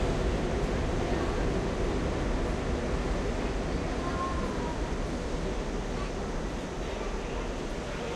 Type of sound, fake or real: real